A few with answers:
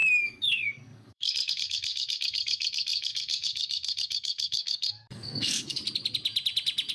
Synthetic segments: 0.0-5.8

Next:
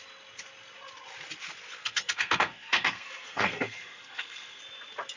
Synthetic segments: 1.8-4.6

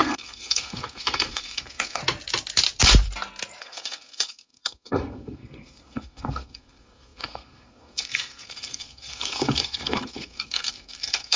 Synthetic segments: 0.0-2.0; 3.6-11.4

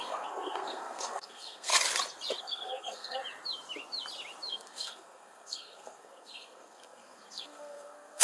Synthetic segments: 0.0-1.7; 2.4-3.2; 4.5-8.2

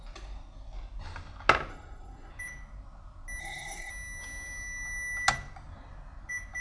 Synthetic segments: 1.7-2.3; 3.4-3.9

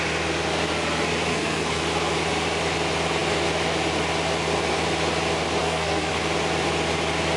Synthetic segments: 1.3-1.8; 5.6-6.1

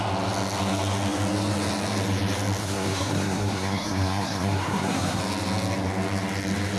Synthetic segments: 2.6-5.2

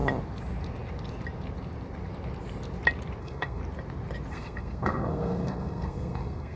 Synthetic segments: 3.2-3.6; 4.3-6.6